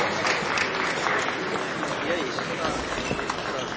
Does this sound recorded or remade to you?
recorded